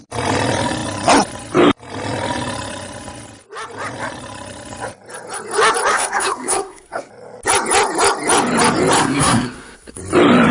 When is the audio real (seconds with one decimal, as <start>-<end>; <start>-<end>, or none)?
0.0-5.9; 7.1-9.0; 10.0-10.5